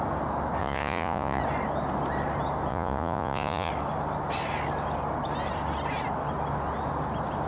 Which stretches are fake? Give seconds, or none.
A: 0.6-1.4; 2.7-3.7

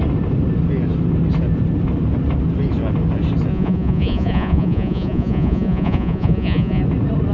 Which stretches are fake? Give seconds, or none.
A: 3.5-6.8

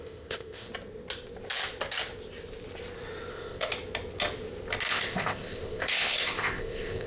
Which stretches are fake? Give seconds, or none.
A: 0.0-0.7; 3.3-3.7; 4.9-7.1

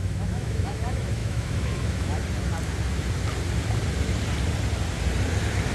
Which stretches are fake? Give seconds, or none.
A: 0.0-2.2

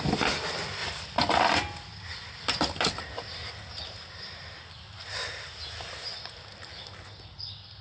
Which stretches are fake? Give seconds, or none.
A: none

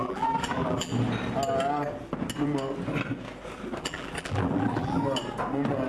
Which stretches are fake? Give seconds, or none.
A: 0.0-0.9; 3.8-5.0

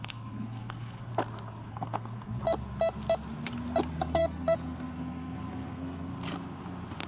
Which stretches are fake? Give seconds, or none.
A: 0.0-1.1; 1.7-2.4; 3.9-6.1

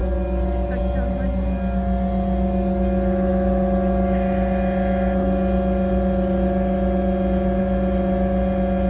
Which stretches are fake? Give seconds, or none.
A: none